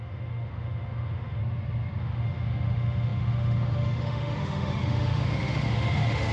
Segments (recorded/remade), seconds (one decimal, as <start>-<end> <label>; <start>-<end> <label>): 0.0-1.4 remade; 1.4-2.0 recorded; 2.0-6.3 remade